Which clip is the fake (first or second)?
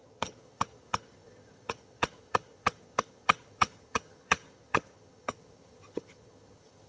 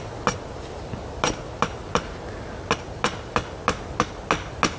first